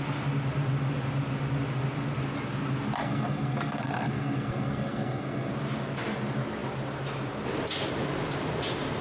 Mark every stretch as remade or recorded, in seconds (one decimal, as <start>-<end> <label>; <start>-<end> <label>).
0.0-3.0 recorded; 3.0-5.5 remade; 5.5-9.0 recorded